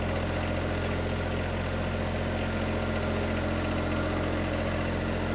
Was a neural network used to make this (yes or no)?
no